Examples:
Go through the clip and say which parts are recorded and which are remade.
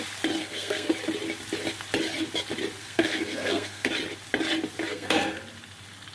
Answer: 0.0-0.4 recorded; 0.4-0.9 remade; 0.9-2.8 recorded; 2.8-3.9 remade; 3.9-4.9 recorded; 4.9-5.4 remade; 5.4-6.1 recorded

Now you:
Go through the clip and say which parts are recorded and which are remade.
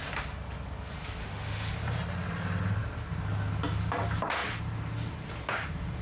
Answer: 0.0-1.2 recorded; 1.2-1.7 remade; 1.7-6.0 recorded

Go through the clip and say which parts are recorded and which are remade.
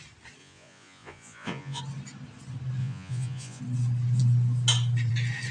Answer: 0.0-0.4 recorded; 0.4-1.8 remade; 1.8-2.8 recorded; 2.8-3.6 remade; 3.6-5.5 recorded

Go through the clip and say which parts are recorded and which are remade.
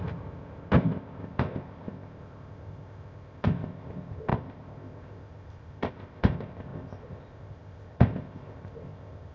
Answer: 0.0-9.3 remade